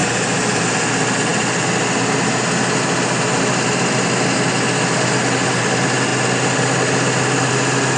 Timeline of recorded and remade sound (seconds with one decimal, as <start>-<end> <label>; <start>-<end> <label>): 0.0-8.0 recorded